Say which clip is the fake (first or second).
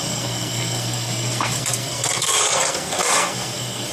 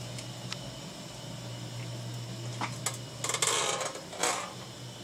first